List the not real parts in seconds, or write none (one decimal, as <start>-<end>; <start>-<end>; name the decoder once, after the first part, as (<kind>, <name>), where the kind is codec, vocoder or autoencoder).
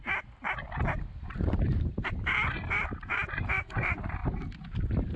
0.0-0.4 (vocoder, BigVGAN v2); 1.2-4.2